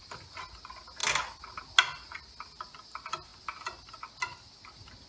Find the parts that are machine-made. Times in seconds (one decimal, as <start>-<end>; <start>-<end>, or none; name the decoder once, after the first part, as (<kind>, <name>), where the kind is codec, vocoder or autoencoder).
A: none